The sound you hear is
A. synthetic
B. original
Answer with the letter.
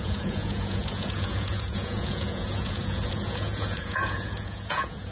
A